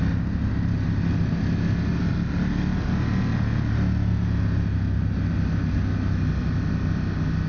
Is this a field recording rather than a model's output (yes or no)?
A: yes